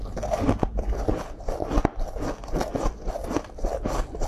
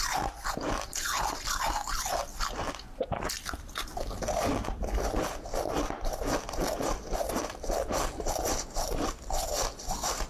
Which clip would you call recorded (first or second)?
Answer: first